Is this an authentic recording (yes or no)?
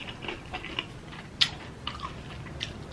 yes